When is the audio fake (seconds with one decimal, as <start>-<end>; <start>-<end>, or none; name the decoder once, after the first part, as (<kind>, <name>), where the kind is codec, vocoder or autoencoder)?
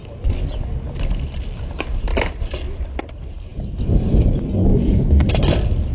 4.7-5.3 (autoencoder, DAC-VAE)